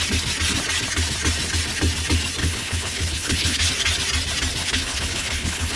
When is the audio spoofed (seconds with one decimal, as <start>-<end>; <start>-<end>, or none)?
2.4-3.7; 4.6-5.8